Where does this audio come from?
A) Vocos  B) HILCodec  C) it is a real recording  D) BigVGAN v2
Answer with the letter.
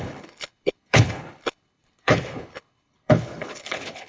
B